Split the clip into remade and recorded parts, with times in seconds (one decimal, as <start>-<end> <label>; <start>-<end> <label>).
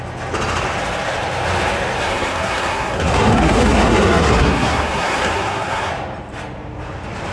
0.0-2.0 recorded; 2.0-5.9 remade; 5.9-7.3 recorded